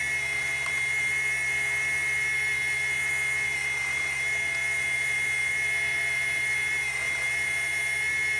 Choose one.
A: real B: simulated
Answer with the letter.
A